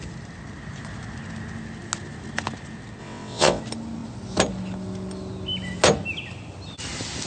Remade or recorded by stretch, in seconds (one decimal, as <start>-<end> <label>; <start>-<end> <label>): 0.0-3.0 recorded; 3.0-3.6 remade; 3.6-7.3 recorded